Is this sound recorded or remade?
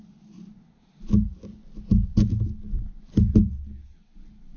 recorded